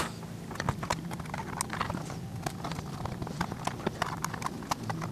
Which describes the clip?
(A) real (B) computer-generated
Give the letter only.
A